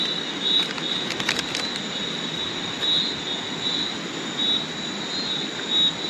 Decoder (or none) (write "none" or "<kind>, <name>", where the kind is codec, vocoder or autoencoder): none